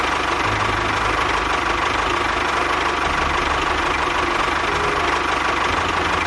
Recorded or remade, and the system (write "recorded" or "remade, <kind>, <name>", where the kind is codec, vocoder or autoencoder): recorded